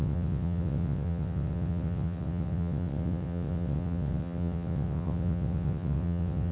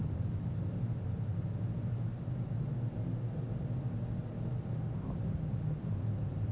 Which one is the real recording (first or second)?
second